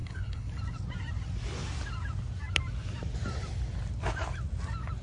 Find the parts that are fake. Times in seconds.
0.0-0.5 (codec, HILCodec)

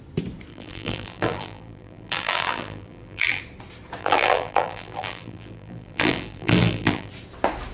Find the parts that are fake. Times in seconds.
0.5-3.4 (vocoder, BigVGAN v2); 4.0-7.1